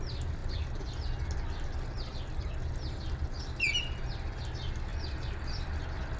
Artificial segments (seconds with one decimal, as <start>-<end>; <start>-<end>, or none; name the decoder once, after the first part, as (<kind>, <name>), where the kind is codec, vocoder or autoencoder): 4.9-5.8 (vocoder, BigVGAN v2)